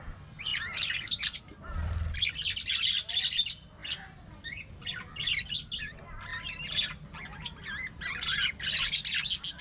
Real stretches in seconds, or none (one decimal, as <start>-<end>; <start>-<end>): 0.0-3.8; 4.9-9.6